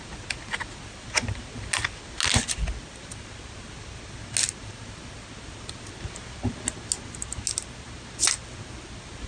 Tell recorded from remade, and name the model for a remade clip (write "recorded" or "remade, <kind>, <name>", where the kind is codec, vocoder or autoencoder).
recorded